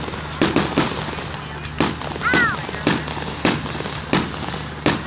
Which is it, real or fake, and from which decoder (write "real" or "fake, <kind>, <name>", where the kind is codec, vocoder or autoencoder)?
real